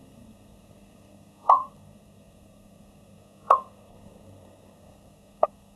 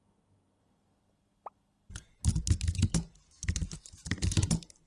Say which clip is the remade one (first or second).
first